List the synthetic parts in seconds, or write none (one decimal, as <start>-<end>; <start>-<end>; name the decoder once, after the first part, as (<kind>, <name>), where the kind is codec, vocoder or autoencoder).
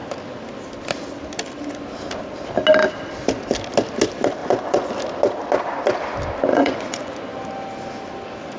4.4-4.9 (vocoder, Vocos); 6.5-7.1